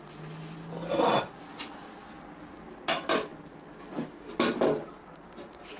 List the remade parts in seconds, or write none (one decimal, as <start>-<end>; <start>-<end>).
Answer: none